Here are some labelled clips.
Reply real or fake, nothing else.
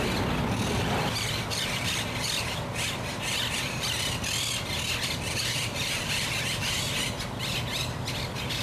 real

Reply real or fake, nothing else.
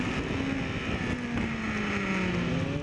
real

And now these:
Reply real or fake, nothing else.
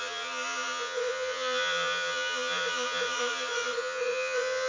fake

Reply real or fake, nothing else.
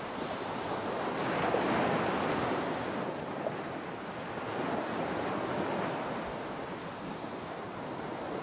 real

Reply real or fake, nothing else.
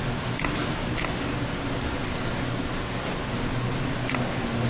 real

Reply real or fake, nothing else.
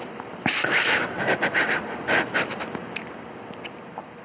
fake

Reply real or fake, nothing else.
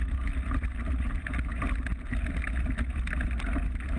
real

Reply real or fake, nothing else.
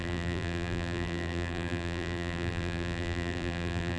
fake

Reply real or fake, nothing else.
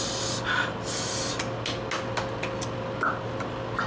real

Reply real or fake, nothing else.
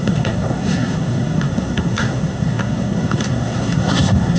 fake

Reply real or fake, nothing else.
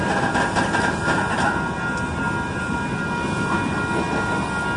real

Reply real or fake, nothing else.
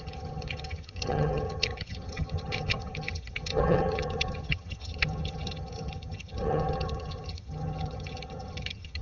fake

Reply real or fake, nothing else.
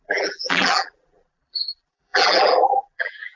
fake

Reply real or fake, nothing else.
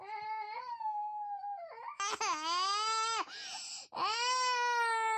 real